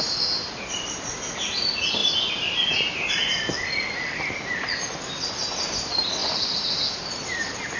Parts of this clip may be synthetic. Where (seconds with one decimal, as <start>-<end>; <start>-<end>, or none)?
none

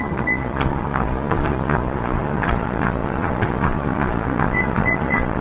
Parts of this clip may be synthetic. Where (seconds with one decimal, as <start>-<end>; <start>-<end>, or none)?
0.0-5.4

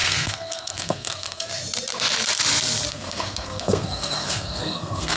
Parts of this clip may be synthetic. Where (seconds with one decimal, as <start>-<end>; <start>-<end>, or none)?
0.0-1.5; 2.9-5.2

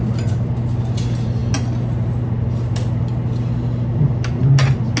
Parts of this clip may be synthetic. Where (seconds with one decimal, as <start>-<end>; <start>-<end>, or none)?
none

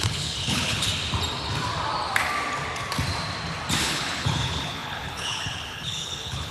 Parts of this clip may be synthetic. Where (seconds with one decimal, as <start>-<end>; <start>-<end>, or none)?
0.0-0.9; 3.8-6.5

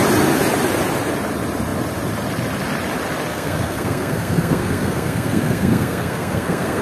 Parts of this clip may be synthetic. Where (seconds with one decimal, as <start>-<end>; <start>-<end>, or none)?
3.3-6.8

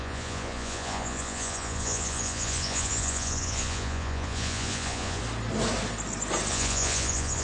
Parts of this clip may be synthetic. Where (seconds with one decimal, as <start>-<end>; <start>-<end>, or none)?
0.0-5.2; 6.5-7.4

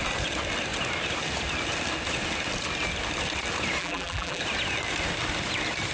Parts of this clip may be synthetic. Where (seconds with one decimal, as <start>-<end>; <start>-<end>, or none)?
3.8-4.4